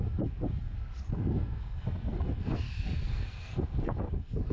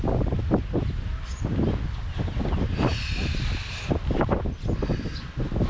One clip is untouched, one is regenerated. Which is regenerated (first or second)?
first